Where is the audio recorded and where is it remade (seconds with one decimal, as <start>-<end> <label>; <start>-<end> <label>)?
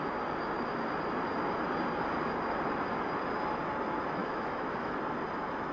0.0-4.2 recorded; 4.2-5.0 remade; 5.0-5.7 recorded